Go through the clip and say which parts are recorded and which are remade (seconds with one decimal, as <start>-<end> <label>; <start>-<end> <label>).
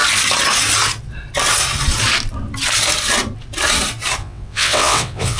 0.0-4.2 recorded; 4.2-5.4 remade